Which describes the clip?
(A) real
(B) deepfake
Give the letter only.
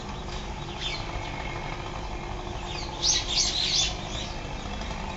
A